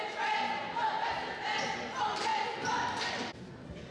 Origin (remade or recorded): recorded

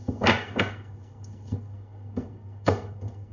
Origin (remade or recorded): remade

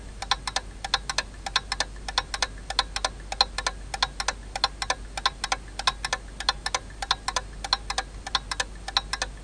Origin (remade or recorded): recorded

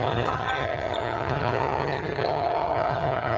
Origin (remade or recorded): remade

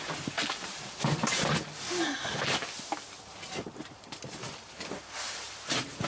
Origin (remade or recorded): recorded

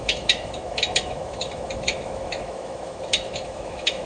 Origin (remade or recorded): remade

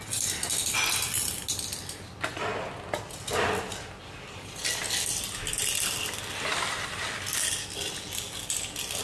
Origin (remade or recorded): recorded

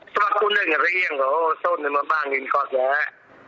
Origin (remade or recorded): recorded